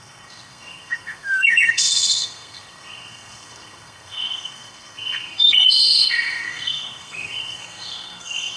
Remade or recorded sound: remade